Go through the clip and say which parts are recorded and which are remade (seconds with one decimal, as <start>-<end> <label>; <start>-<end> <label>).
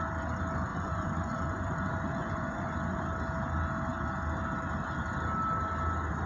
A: 0.0-0.7 recorded; 0.7-3.0 remade; 3.0-6.3 recorded